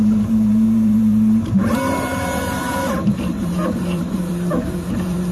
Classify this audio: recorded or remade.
remade